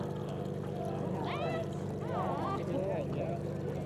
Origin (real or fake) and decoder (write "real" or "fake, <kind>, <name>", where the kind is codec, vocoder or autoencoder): real